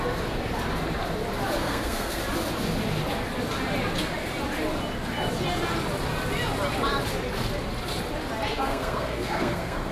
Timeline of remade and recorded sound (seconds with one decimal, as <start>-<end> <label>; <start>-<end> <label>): 0.0-1.6 recorded; 1.6-2.2 remade; 2.2-8.5 recorded; 8.5-9.9 remade